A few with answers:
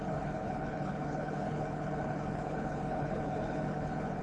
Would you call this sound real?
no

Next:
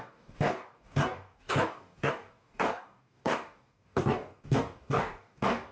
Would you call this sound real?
no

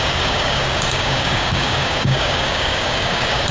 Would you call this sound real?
no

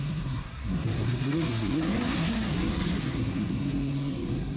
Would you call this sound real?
no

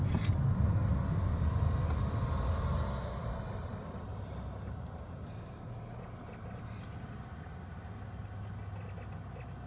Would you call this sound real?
yes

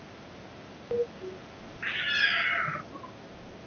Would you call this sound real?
yes